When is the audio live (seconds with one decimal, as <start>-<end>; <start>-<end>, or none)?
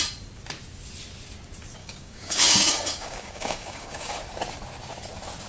0.0-1.8; 4.1-5.5